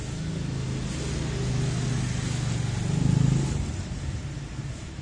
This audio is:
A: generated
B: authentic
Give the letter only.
B